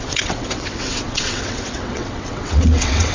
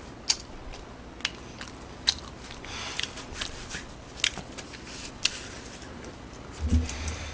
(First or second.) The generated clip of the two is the first